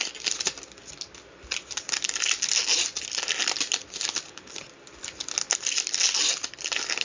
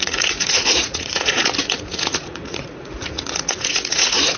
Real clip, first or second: first